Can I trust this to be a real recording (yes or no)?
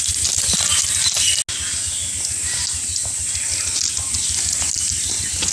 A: yes